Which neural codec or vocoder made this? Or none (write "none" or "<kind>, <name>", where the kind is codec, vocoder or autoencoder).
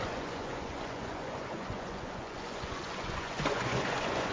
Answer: vocoder, Vocos